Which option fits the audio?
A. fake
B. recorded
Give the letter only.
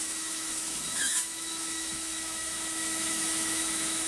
A